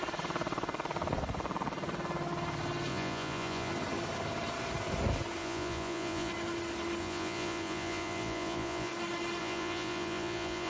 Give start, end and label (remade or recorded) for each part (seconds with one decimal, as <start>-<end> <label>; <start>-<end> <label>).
0.0-2.9 recorded; 2.9-3.7 remade; 3.7-5.4 recorded; 5.4-6.3 remade; 6.3-7.0 recorded; 7.0-8.9 remade; 8.9-9.4 recorded; 9.4-10.7 remade

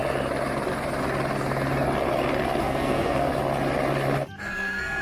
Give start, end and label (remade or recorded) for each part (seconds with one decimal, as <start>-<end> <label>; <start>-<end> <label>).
0.0-2.6 recorded; 2.6-3.3 remade; 3.3-4.4 recorded; 4.4-5.0 remade

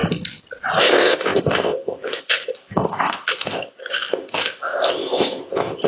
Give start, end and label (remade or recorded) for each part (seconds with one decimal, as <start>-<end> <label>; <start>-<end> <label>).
0.0-0.8 recorded; 0.8-5.9 remade

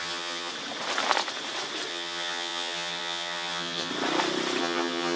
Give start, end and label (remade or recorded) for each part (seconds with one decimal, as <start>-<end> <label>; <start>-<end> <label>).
0.0-0.5 remade; 0.5-1.9 recorded; 1.9-3.9 remade; 3.9-4.6 recorded; 4.6-5.2 remade

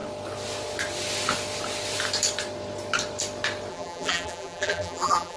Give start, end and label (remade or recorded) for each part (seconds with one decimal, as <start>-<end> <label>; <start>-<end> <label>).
0.0-3.7 recorded; 3.7-5.4 remade

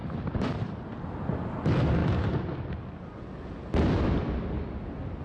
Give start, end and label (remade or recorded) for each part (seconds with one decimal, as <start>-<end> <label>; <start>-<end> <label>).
0.0-0.7 remade; 0.7-5.2 recorded

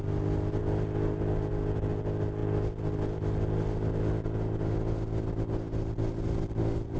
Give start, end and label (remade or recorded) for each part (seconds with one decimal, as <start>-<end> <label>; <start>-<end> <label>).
0.0-7.0 recorded